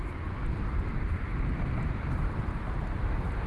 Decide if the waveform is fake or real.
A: real